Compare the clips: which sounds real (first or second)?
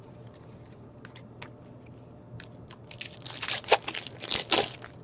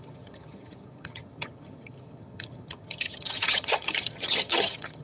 first